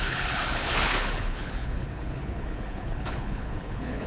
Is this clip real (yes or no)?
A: no